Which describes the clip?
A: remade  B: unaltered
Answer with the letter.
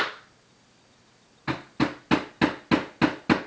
B